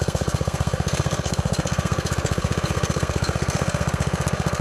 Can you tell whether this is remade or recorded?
remade